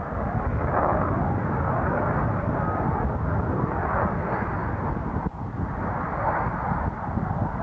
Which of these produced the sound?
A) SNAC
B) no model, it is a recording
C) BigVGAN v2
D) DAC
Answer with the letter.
B